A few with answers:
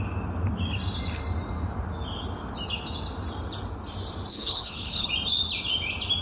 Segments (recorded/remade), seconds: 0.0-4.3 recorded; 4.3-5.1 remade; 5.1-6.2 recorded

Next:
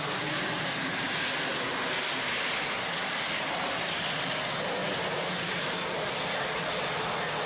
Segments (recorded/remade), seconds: 0.0-7.5 recorded

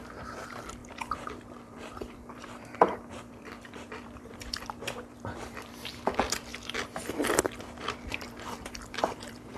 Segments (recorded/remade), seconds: 0.0-6.5 remade; 6.5-7.1 recorded; 7.1-9.6 remade

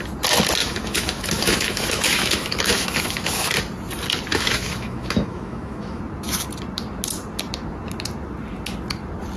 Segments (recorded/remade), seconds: 0.0-0.6 recorded; 0.6-3.5 remade; 3.5-4.3 recorded; 4.3-6.0 remade; 6.0-9.4 recorded

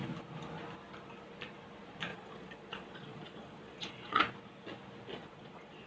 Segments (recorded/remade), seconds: 0.0-2.1 recorded; 2.1-4.2 remade; 4.2-5.1 recorded; 5.1-5.9 remade

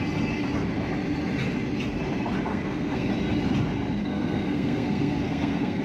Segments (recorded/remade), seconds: 0.0-2.5 recorded; 2.5-3.1 remade; 3.1-4.0 recorded; 4.0-5.8 remade